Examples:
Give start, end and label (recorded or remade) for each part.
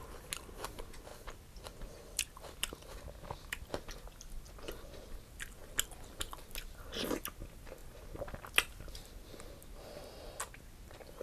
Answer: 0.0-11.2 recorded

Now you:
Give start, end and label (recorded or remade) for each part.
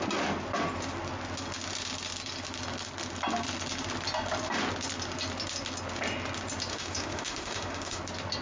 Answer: 0.0-6.7 recorded; 6.7-8.0 remade; 8.0-8.4 recorded